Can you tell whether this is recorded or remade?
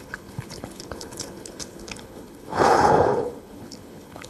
remade